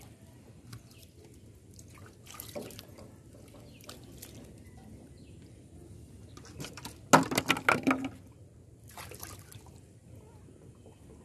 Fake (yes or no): no